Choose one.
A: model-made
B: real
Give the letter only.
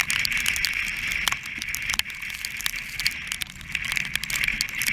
B